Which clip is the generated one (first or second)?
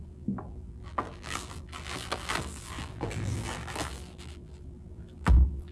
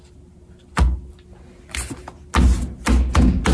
first